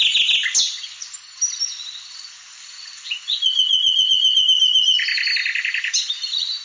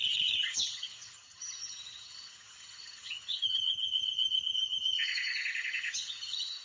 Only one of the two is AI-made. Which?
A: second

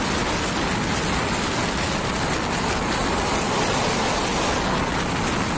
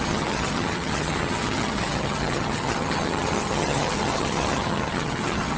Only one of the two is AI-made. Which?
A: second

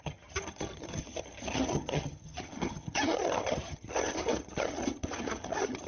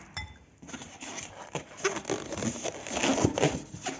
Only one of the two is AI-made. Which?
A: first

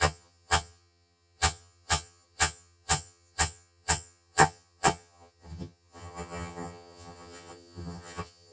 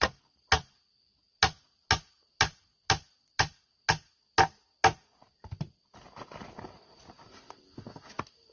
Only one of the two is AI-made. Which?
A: first